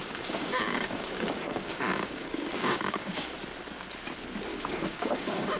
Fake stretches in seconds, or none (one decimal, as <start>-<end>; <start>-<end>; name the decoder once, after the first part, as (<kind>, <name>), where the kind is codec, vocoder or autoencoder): 0.0-3.4 (codec, DAC); 4.5-5.6